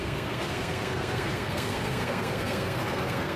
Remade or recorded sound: remade